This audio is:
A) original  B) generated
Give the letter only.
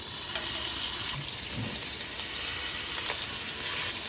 A